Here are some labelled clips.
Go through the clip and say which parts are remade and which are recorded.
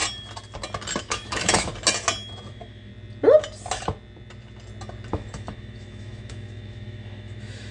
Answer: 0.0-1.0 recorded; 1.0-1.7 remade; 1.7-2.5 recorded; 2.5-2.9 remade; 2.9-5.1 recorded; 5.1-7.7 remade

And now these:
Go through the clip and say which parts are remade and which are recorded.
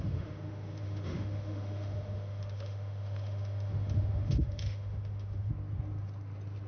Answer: 0.0-5.5 remade; 5.5-6.7 recorded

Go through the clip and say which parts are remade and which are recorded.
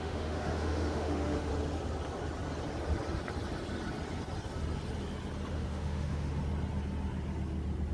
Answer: 0.0-1.5 remade; 1.5-5.5 recorded; 5.5-6.4 remade; 6.4-7.9 recorded